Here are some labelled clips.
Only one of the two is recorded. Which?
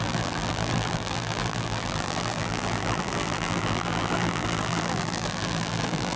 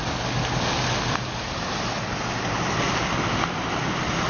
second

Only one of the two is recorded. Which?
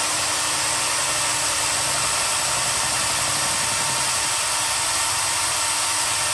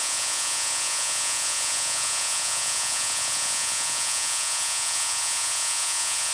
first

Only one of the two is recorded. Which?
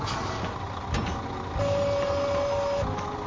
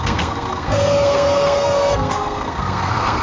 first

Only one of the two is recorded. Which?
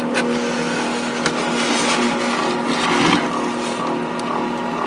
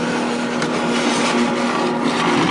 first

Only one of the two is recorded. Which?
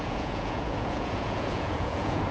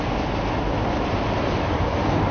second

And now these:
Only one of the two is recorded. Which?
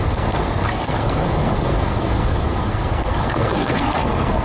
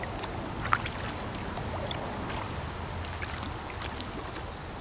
second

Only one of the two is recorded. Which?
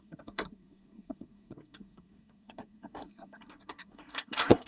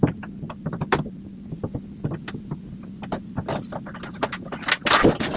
second